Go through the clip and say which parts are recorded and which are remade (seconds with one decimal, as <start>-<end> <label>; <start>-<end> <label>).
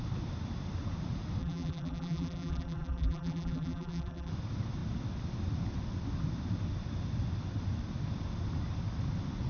0.0-1.4 recorded; 1.4-4.3 remade; 4.3-9.5 recorded